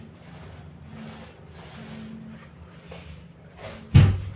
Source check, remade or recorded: recorded